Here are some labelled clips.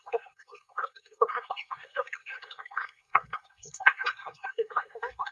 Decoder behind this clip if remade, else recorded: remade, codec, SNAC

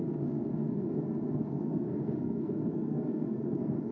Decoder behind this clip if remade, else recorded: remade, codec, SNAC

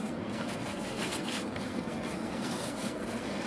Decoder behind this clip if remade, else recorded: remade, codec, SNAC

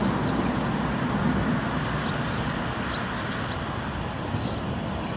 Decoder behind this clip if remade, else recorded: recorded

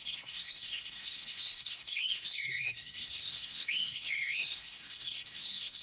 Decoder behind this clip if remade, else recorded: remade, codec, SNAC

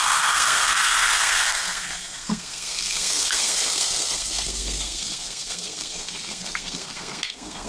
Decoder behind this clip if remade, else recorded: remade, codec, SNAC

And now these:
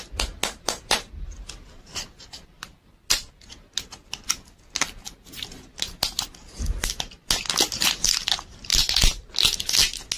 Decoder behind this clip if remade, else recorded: recorded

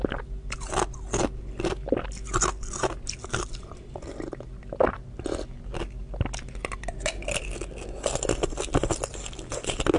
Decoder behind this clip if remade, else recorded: recorded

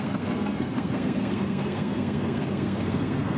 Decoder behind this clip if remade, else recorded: remade, codec, SNAC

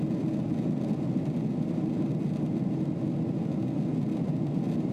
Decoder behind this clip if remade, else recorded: recorded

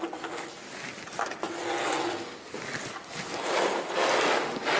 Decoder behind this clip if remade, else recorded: recorded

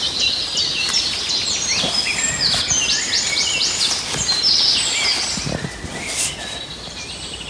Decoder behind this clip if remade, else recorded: recorded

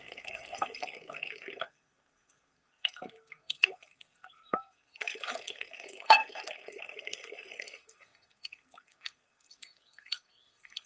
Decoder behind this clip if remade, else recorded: remade, codec, SNAC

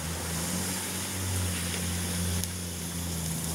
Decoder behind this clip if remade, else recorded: recorded